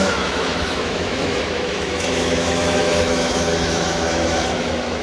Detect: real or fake fake